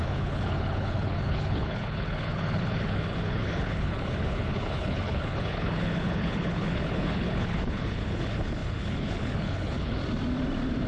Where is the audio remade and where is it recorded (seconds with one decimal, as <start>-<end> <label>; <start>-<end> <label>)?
0.0-10.0 remade; 10.0-10.9 recorded